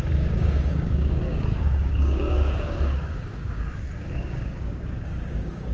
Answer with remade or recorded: remade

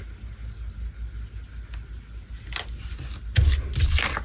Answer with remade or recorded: recorded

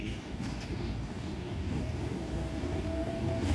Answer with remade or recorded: remade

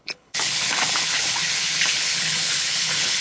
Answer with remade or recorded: remade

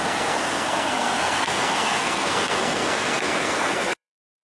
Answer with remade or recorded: remade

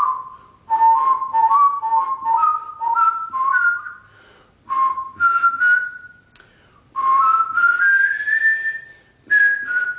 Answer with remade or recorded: recorded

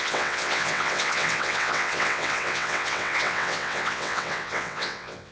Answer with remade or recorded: remade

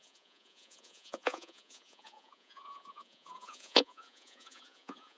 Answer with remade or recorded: remade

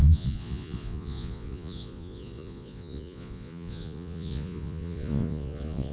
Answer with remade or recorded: remade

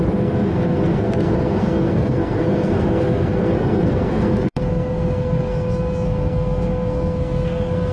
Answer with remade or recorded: remade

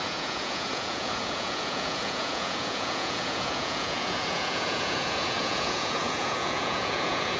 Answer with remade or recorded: remade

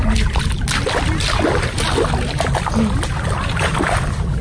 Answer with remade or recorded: recorded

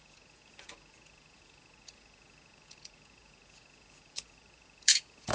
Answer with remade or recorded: remade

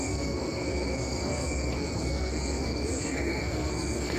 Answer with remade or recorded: remade